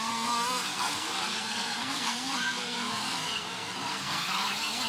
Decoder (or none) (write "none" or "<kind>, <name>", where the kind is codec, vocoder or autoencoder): codec, SNAC